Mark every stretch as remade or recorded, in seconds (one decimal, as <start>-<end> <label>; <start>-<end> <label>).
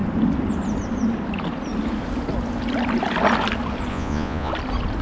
0.0-3.9 recorded; 3.9-4.5 remade; 4.5-5.0 recorded